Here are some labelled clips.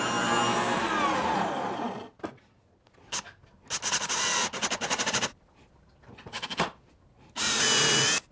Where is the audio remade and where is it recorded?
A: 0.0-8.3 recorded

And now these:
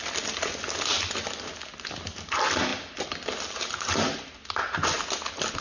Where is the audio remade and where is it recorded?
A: 0.0-5.6 recorded

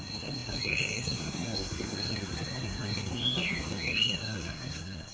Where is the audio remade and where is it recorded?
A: 0.0-5.1 remade

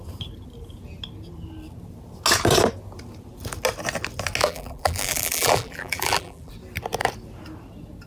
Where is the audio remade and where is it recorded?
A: 0.0-4.4 recorded; 4.4-6.5 remade; 6.5-8.1 recorded

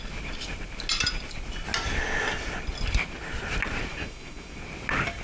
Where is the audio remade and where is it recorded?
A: 0.0-3.9 recorded; 3.9-4.6 remade; 4.6-5.2 recorded

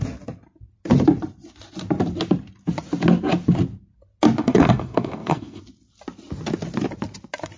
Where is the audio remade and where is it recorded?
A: 0.0-4.4 recorded; 4.4-5.6 remade; 5.6-7.6 recorded

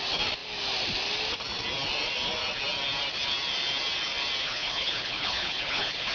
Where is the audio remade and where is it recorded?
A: 0.0-4.4 recorded; 4.4-6.1 remade

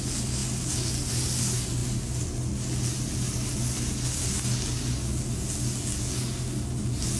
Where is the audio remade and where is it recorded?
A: 0.0-7.2 recorded